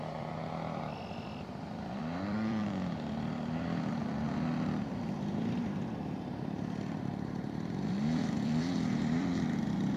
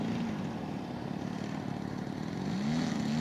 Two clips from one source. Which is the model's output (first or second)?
first